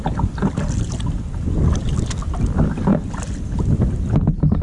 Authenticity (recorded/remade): recorded